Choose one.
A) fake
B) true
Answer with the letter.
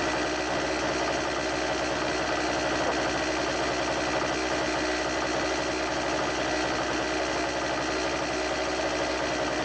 B